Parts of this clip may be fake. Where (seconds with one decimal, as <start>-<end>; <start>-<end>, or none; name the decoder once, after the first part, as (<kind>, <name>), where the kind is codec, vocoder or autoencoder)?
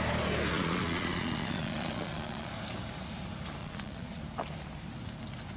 0.5-2.5 (vocoder, Vocos); 3.6-4.2